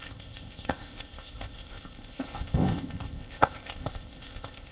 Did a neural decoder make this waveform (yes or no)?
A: yes